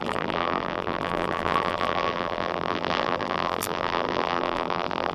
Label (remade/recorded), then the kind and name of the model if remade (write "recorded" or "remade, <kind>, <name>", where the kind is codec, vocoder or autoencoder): remade, vocoder, BigVGAN v2